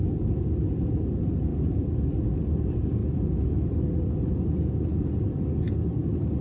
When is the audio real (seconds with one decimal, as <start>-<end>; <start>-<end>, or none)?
0.0-6.4